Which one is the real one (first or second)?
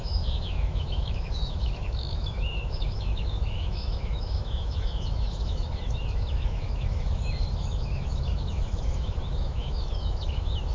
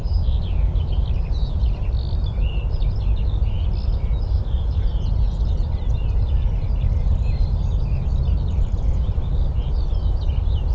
second